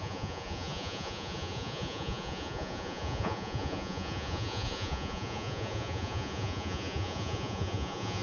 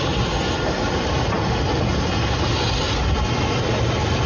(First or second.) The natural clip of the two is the second